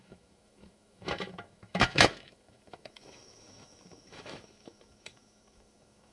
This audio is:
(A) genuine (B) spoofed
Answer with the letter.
B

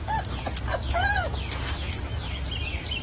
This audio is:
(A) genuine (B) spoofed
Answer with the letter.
A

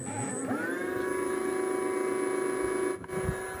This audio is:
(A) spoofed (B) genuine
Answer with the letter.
B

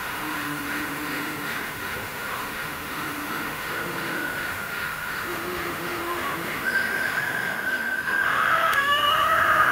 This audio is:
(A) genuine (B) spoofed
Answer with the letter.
B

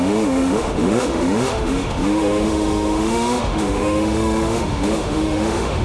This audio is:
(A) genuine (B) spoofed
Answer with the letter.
B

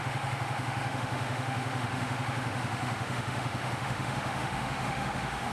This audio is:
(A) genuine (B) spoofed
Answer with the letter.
B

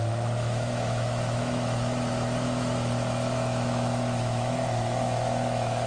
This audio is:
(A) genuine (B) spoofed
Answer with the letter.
B